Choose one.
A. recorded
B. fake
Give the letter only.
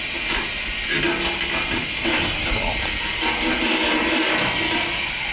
A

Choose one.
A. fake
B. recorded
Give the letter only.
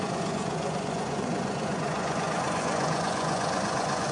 A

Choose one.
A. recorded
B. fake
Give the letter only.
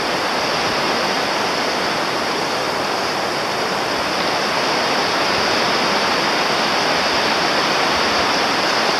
A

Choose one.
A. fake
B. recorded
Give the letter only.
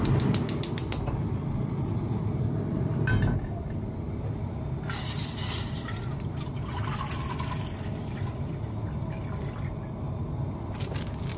B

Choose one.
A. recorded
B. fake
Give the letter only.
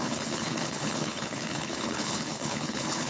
B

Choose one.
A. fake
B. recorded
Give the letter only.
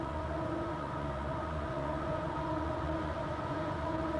A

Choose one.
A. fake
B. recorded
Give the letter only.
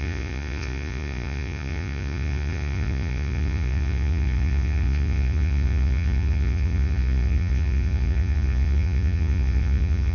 A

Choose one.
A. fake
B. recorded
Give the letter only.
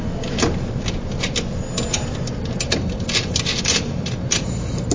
B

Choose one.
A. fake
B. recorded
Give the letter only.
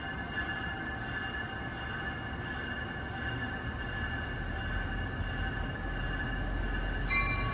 B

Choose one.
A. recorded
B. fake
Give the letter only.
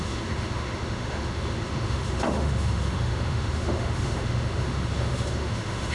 B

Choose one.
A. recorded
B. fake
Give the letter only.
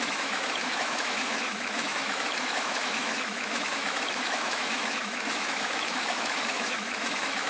B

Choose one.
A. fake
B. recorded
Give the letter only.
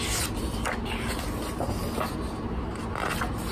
B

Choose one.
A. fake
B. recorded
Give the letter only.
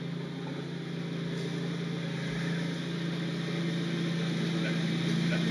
B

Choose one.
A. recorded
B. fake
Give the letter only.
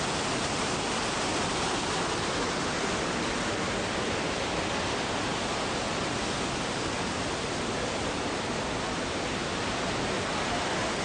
A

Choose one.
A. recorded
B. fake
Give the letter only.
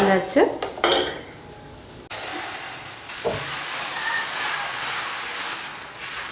A